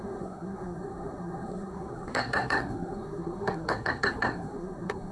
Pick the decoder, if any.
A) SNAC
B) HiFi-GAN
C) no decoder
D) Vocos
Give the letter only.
A